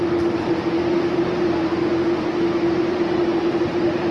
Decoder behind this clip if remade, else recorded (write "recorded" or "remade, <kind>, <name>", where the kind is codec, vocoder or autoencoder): recorded